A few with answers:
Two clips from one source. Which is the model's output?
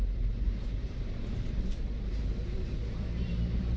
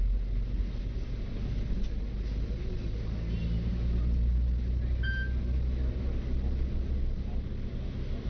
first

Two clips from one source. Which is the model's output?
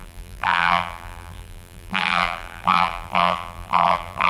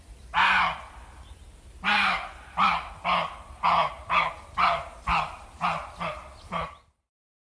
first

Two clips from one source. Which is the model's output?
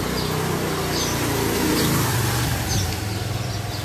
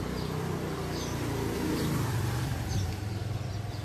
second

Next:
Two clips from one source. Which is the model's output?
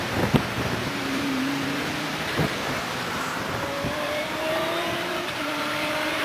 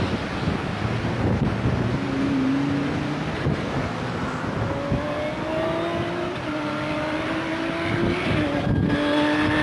first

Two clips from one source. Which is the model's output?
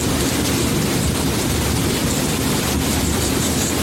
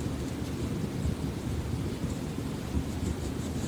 second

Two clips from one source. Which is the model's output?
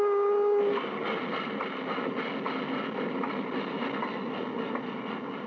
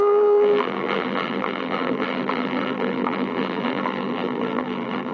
second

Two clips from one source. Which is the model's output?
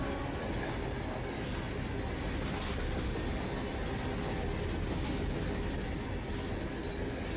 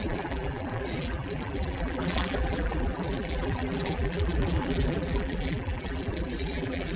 second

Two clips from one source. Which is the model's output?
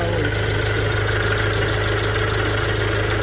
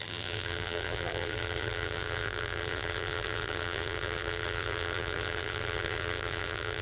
second